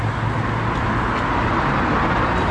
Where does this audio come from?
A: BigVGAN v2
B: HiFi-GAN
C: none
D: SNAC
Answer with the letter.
C